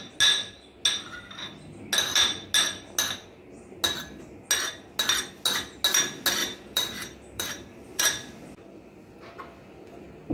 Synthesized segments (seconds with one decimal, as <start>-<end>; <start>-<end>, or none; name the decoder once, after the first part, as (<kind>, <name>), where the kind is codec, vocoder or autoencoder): 6.4-8.0 (vocoder, BigVGAN v2)